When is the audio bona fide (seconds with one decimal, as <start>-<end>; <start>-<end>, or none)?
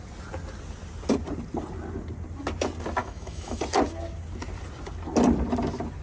0.0-3.0; 3.6-6.0